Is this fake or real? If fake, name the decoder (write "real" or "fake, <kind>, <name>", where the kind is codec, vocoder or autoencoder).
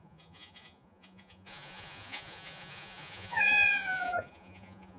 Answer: fake, vocoder, Vocos